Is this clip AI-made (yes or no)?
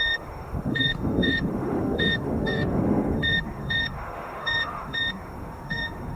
yes